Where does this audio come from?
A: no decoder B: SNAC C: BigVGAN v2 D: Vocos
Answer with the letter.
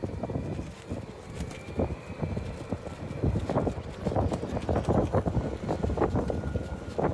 A